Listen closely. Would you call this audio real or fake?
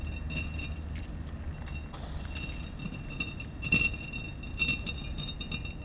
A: real